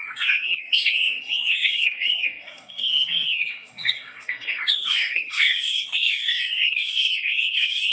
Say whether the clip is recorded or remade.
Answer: remade